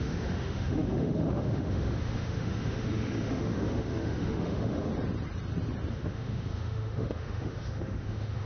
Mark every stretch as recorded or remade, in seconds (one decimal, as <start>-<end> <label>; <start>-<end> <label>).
0.0-4.9 remade; 4.9-5.9 recorded; 5.9-8.5 remade